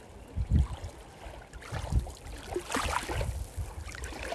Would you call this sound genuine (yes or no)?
yes